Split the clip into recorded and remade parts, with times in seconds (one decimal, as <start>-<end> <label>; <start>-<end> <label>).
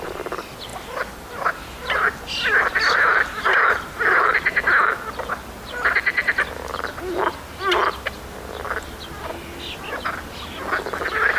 0.0-11.4 recorded